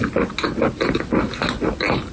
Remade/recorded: recorded